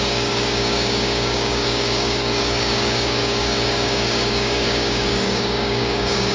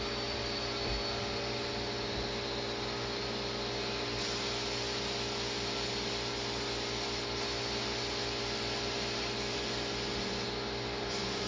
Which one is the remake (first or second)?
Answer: first